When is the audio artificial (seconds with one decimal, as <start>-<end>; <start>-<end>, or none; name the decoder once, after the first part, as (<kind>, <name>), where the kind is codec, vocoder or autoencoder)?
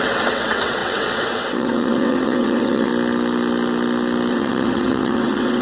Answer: 0.0-2.9 (vocoder, WaveNeXt); 4.3-5.6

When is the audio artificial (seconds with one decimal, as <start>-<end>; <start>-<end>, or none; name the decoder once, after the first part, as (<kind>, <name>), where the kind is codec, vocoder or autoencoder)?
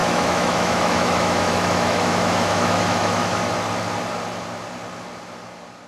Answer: 0.0-3.5 (autoencoder, DAC-VAE)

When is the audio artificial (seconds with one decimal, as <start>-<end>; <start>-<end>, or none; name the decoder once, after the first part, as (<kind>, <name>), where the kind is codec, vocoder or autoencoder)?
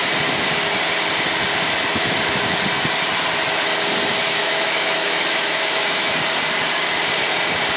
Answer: 4.4-6.1 (autoencoder, DAC-VAE)